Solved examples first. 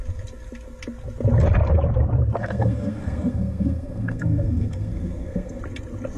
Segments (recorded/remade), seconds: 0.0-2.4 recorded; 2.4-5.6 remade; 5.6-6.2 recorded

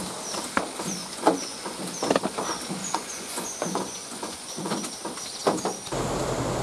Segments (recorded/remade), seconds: 0.0-1.0 recorded; 1.0-1.8 remade; 1.8-2.8 recorded; 2.8-4.9 remade; 4.9-6.6 recorded

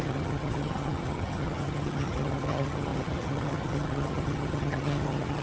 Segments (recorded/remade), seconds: 0.0-5.4 remade